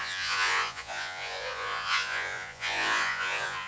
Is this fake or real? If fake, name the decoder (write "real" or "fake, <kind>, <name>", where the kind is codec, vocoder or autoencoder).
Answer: fake, vocoder, Vocos